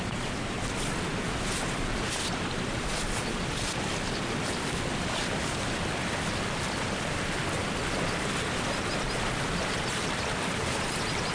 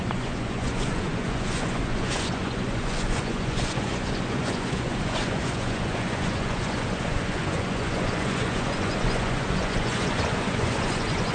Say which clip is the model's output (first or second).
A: second